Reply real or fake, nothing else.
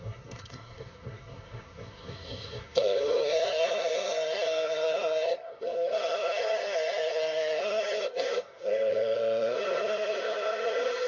fake